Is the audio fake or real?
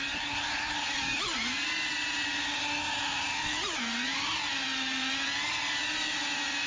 real